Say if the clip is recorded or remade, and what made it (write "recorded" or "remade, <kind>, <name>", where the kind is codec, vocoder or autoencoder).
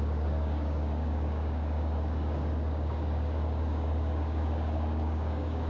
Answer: remade, codec, DAC